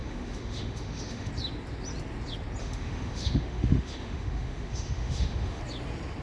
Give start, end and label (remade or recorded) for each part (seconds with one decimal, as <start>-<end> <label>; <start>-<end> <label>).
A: 0.0-1.3 remade; 1.3-2.6 recorded; 2.6-5.6 remade; 5.6-6.2 recorded